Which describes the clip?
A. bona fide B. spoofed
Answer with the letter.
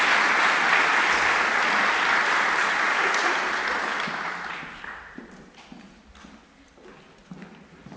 A